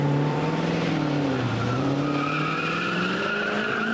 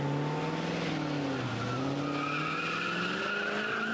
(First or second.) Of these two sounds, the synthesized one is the first